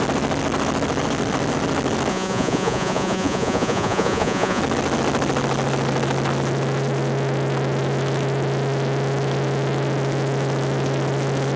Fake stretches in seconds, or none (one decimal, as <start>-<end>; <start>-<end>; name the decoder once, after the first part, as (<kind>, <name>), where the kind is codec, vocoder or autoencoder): 2.1-4.6 (vocoder, Vocos)